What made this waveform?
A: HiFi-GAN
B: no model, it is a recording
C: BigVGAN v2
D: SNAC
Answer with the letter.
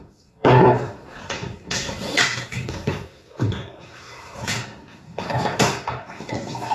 D